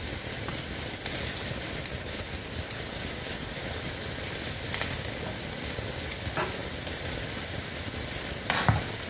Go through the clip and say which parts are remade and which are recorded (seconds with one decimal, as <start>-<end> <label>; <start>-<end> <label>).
0.0-9.1 recorded